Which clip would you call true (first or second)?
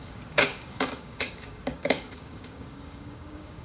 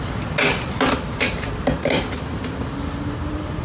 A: second